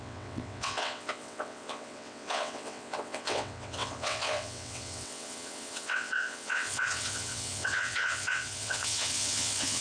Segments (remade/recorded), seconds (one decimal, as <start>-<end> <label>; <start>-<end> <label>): 0.0-9.8 remade